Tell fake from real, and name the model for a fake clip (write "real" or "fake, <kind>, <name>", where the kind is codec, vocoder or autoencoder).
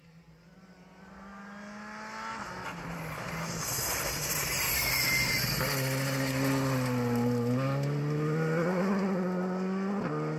real